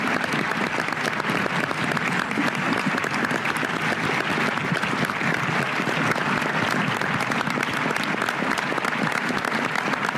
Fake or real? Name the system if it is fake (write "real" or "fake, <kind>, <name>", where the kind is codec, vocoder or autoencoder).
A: real